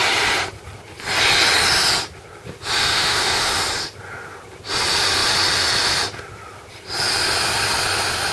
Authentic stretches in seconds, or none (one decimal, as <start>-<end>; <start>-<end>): 0.0-2.8; 3.5-8.3